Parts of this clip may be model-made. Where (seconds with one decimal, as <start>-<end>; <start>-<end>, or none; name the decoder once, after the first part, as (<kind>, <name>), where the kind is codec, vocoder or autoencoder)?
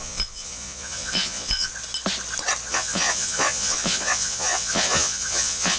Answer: 0.0-1.7 (vocoder, Vocos); 2.7-5.8